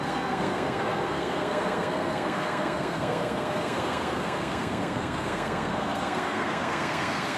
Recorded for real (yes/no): no